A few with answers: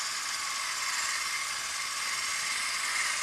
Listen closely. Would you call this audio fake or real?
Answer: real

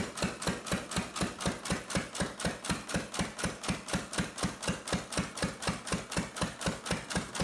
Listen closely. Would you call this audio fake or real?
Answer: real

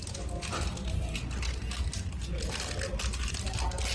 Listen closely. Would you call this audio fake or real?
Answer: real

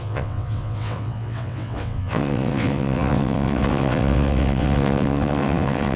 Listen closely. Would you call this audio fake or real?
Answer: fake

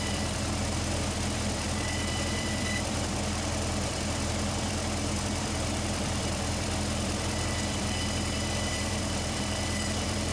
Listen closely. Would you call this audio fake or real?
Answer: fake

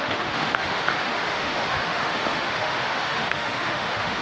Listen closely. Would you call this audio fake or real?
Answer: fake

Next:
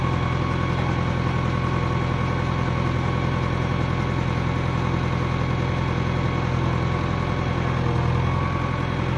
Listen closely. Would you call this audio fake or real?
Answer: real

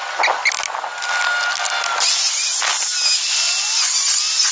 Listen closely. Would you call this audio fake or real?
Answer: real